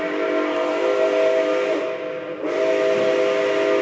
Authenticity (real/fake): real